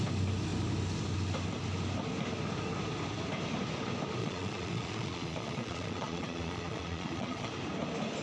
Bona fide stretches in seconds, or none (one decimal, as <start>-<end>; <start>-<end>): 0.0-4.2; 7.5-8.2